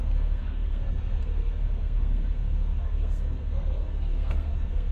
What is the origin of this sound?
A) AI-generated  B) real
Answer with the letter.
A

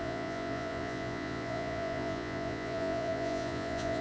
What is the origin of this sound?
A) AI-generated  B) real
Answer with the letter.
A